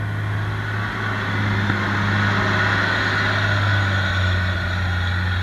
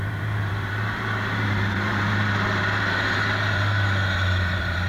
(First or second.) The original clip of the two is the first